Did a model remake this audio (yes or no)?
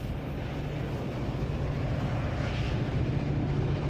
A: no